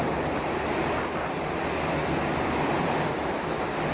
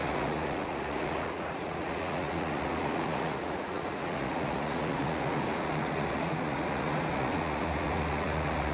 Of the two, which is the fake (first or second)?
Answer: second